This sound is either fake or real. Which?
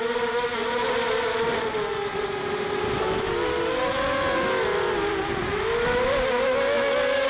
real